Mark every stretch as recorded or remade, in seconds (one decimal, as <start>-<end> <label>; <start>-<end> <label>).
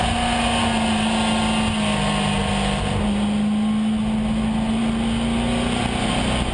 0.0-6.5 recorded